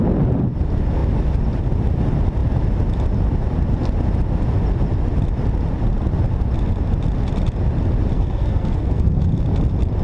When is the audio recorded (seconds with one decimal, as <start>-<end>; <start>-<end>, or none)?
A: 0.0-8.1; 9.2-10.0